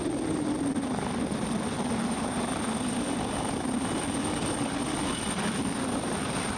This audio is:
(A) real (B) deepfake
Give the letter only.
A